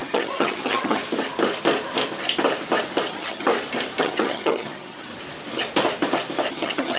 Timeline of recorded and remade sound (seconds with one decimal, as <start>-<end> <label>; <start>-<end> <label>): 0.0-1.0 remade; 1.0-3.1 recorded; 3.1-3.5 remade; 3.5-4.0 recorded; 4.0-5.1 remade; 5.1-6.5 recorded; 6.5-7.0 remade